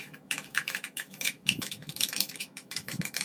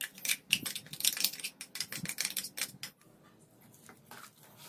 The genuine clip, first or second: second